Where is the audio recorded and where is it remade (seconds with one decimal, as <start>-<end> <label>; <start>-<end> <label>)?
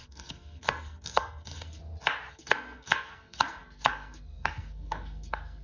0.0-1.8 remade; 1.8-2.3 recorded; 2.3-5.6 remade